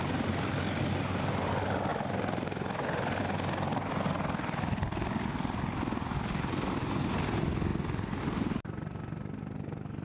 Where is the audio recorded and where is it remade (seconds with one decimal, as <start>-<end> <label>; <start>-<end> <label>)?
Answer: 0.0-10.0 recorded